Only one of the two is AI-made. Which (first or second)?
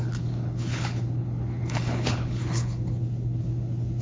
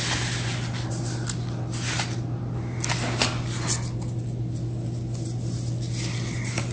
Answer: first